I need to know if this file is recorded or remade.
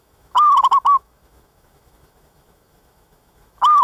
remade